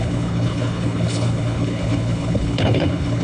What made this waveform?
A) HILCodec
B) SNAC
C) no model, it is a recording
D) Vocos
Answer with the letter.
A